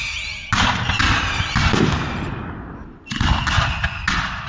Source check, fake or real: real